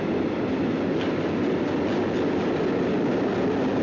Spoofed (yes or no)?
no